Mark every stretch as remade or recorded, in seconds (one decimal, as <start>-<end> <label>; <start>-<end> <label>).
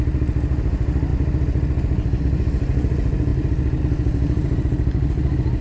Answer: 0.0-5.6 recorded